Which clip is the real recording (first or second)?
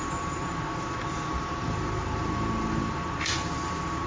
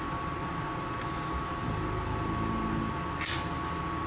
second